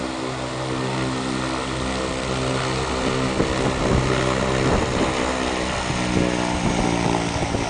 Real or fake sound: real